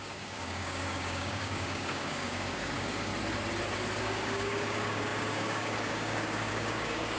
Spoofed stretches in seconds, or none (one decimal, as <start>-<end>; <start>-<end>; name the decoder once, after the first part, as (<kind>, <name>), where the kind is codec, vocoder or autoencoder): 0.0-3.1 (codec, DAC); 4.0-7.2